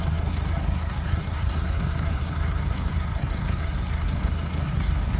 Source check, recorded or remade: remade